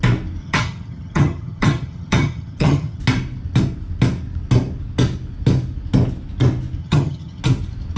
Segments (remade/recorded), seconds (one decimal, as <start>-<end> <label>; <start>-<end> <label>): 0.0-0.4 recorded; 0.4-3.0 remade; 3.0-6.8 recorded; 6.8-7.4 remade; 7.4-8.0 recorded